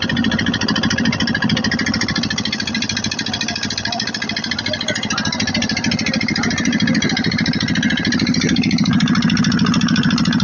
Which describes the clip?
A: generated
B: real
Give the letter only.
B